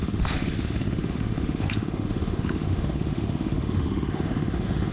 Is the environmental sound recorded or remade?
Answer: remade